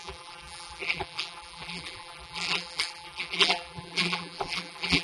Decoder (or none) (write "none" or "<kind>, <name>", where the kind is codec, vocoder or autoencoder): vocoder, BigVGAN v2